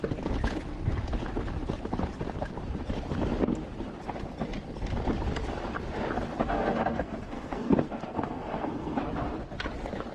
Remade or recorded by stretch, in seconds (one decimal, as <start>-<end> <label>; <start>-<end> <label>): 0.0-6.3 recorded; 6.3-9.0 remade; 9.0-10.1 recorded